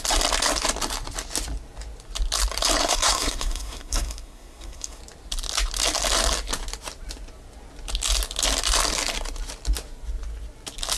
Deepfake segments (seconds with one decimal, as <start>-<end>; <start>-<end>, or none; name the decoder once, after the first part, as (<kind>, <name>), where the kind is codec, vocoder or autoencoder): 2.8-5.0 (codec, SNAC)